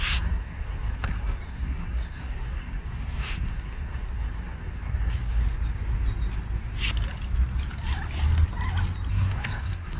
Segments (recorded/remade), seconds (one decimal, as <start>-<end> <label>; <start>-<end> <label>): 0.0-5.4 remade; 5.4-9.1 recorded; 9.1-10.0 remade